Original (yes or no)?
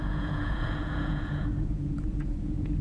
no